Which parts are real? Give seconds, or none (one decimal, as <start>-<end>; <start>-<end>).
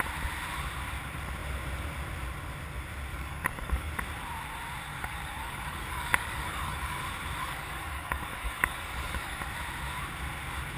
0.0-3.1; 3.9-4.9; 7.0-7.4; 9.4-10.8